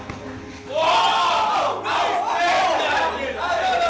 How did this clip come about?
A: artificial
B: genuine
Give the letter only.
B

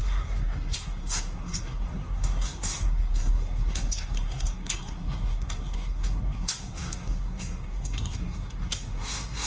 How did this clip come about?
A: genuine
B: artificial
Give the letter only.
B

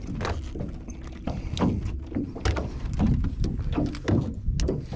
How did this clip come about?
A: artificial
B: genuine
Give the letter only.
B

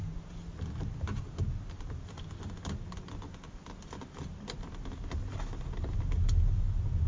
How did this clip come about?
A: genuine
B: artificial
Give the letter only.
A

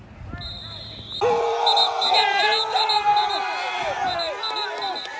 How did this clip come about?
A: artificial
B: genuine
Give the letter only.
B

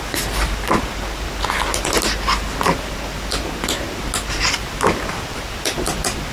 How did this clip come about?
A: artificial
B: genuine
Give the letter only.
B